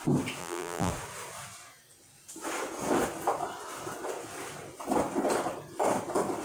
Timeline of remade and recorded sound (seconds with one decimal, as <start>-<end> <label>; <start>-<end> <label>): 0.0-0.4 recorded; 0.4-0.9 remade; 0.9-6.4 recorded